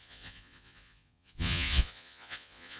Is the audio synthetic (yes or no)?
yes